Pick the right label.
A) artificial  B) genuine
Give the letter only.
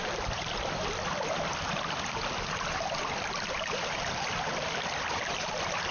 B